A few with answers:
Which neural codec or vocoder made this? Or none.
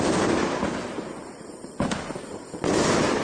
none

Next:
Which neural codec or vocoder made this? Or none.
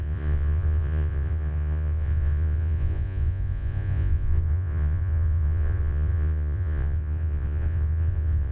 vocoder, Vocos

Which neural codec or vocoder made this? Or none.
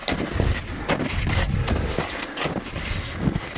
none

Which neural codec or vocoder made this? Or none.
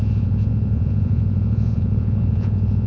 vocoder, Vocos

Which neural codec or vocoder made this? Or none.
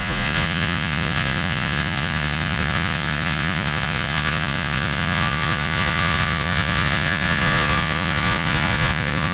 vocoder, Vocos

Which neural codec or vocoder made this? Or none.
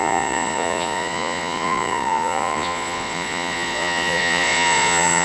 vocoder, Vocos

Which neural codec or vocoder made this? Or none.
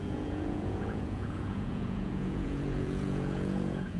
vocoder, Vocos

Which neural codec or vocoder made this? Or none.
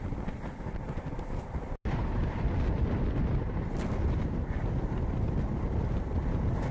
none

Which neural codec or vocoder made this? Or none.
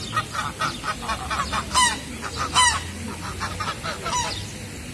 none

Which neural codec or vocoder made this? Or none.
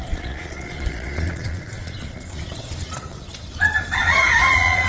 vocoder, Vocos